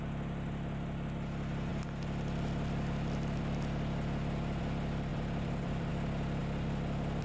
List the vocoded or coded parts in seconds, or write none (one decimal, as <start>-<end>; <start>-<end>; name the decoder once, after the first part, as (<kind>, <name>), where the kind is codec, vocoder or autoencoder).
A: 5.1-5.9 (vocoder, BigVGAN v2)